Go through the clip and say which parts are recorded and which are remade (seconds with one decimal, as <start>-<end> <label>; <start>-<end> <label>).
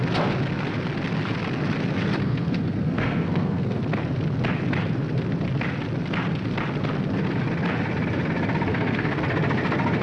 0.0-2.2 recorded; 2.2-3.8 remade; 3.8-8.7 recorded; 8.7-9.2 remade; 9.2-10.0 recorded